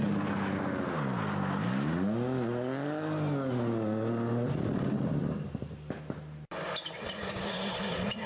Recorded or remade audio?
recorded